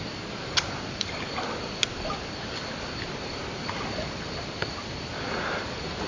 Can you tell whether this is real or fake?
real